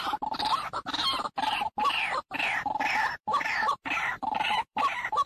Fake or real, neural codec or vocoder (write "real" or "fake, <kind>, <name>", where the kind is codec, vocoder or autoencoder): fake, vocoder, BigVGAN v2